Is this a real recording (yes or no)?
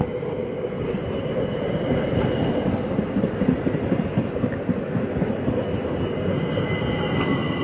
yes